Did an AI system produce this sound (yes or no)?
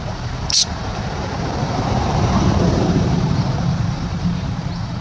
yes